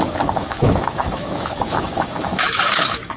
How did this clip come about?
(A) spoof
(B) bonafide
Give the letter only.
A